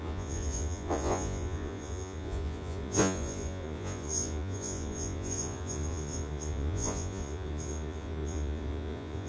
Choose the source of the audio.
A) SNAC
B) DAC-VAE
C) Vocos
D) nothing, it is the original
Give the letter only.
C